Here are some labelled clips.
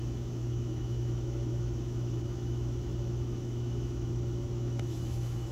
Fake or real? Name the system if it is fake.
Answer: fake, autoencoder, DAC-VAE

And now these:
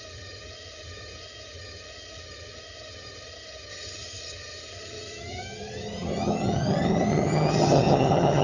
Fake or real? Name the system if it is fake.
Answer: fake, vocoder, HiFi-GAN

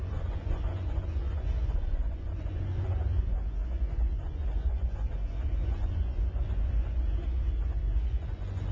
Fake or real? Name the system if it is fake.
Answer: fake, vocoder, Vocos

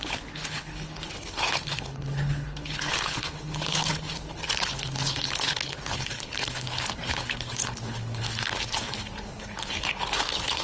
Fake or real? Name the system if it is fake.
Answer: fake, codec, HILCodec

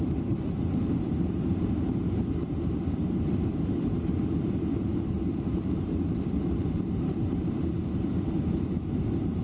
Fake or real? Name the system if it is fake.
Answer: fake, vocoder, BigVGAN v2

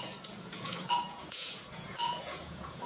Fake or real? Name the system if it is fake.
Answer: fake, vocoder, Vocos